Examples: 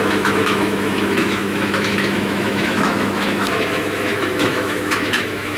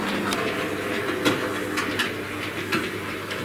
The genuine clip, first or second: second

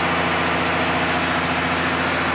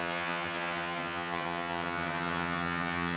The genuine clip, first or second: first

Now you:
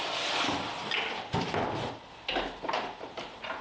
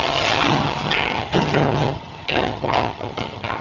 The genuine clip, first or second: first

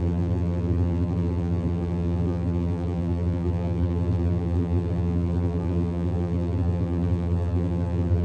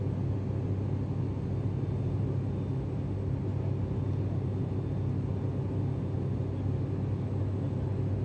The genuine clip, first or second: second